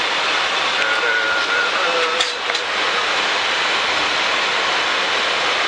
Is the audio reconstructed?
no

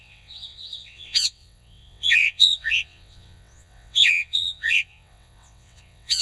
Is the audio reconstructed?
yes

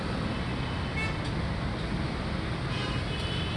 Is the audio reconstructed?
no